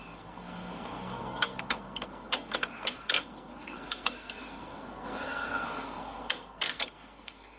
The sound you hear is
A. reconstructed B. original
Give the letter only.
A